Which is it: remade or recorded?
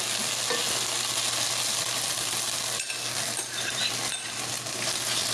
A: recorded